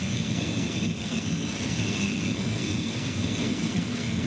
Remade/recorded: remade